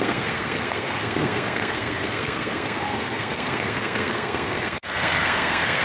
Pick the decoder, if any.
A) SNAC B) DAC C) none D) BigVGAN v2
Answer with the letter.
A